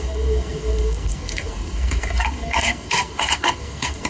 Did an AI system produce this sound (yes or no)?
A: yes